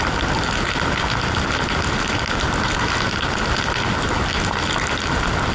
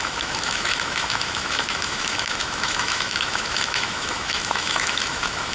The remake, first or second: second